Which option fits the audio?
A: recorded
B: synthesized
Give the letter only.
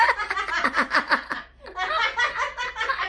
B